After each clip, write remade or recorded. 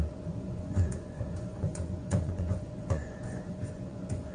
remade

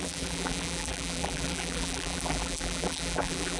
remade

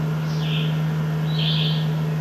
recorded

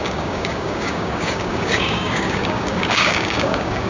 remade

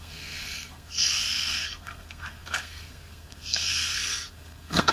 remade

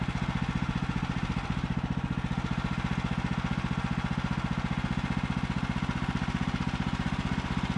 recorded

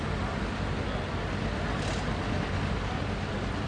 recorded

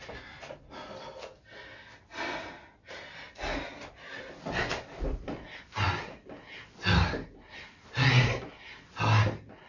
recorded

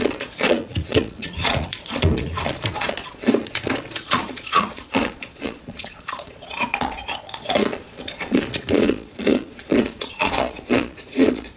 remade